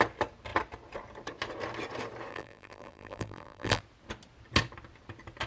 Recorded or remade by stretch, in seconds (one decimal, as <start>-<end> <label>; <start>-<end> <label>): 0.0-2.3 recorded; 2.3-3.8 remade; 3.8-5.5 recorded